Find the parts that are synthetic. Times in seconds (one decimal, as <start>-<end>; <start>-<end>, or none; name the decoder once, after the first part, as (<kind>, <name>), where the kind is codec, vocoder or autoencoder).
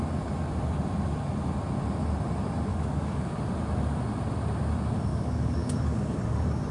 2.7-3.4 (codec, DAC); 5.1-6.2